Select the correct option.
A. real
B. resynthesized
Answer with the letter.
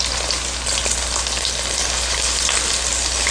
A